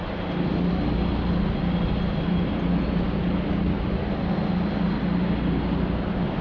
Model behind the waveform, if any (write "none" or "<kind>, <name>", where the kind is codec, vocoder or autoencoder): none